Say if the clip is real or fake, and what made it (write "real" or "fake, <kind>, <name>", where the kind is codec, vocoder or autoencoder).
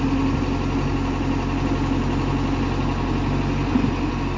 real